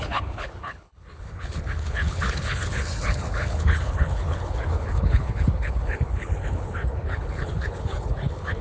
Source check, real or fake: fake